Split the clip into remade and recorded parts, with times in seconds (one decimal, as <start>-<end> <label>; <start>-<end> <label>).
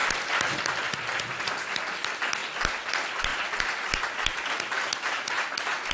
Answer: 0.0-0.6 recorded; 0.6-2.4 remade; 2.4-2.9 recorded; 2.9-3.3 remade; 3.3-5.3 recorded; 5.3-5.9 remade